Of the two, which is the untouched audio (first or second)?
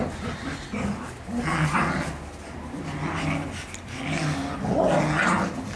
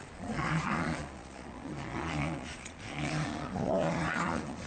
first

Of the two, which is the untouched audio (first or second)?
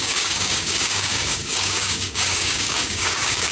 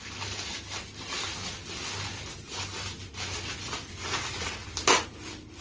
second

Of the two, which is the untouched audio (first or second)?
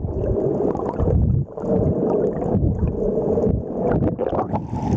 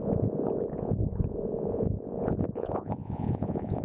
first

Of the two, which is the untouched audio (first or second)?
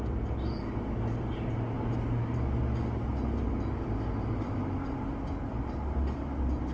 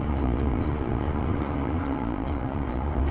first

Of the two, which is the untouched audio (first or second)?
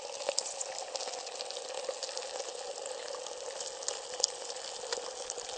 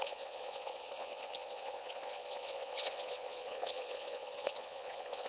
first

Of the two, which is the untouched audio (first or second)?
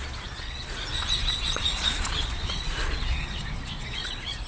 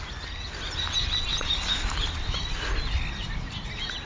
second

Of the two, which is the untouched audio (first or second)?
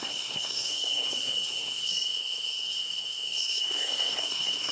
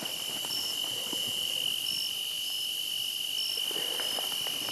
second